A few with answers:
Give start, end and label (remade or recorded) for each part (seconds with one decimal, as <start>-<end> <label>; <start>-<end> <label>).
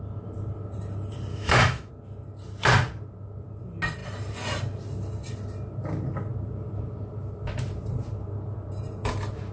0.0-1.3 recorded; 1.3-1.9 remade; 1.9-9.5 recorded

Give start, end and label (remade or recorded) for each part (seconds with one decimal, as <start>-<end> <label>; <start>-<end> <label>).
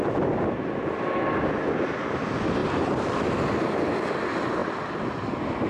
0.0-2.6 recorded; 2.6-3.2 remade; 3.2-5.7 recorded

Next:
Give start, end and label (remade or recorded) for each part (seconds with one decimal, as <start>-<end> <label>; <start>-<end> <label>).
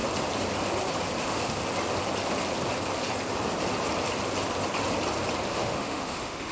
0.0-1.2 recorded; 1.2-1.6 remade; 1.6-5.5 recorded; 5.5-6.5 remade